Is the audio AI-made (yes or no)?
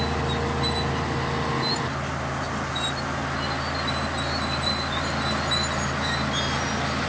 no